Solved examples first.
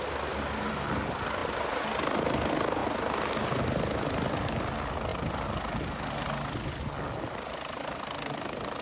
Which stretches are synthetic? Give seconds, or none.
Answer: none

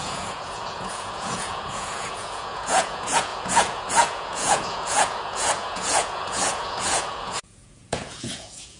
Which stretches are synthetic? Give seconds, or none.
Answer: 0.0-8.8

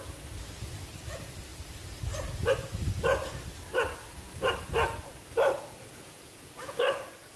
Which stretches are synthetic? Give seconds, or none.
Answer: 5.8-6.8